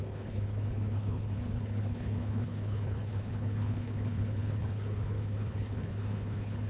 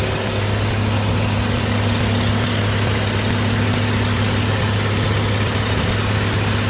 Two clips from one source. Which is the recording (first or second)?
second